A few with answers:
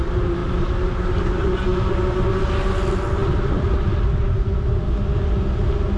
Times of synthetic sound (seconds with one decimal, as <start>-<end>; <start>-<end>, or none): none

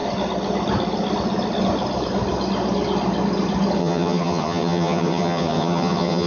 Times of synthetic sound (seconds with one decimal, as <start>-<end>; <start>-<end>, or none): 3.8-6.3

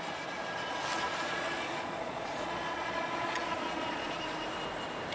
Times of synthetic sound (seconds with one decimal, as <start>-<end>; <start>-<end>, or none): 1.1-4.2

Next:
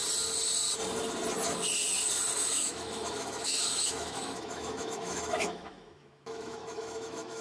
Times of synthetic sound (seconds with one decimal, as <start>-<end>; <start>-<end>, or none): 2.5-7.4

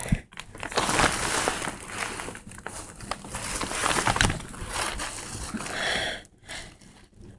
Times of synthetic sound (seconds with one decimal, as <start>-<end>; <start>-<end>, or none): none